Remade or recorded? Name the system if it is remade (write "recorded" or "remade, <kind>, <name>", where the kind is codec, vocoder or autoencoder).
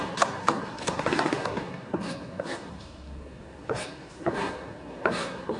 remade, codec, SNAC